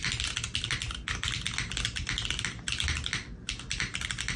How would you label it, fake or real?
real